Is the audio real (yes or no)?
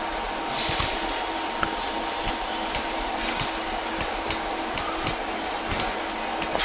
yes